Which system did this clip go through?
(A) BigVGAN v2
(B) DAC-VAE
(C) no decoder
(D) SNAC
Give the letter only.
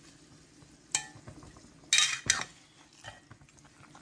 C